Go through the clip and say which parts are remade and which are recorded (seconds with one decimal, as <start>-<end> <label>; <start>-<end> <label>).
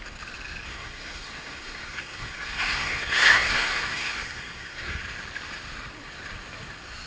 0.0-0.7 recorded; 0.7-5.0 remade; 5.0-7.1 recorded